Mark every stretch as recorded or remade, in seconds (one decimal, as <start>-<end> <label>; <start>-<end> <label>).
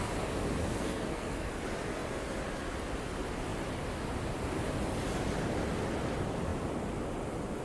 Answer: 0.0-0.6 recorded; 0.6-1.6 remade; 1.6-7.6 recorded